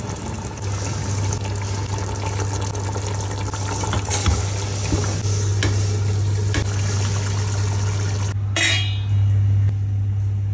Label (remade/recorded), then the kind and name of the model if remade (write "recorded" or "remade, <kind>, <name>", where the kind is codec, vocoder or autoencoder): recorded